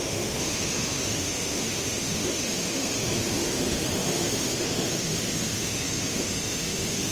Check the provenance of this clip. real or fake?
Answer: fake